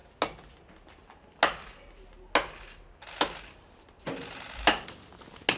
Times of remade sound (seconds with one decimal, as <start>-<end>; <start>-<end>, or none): none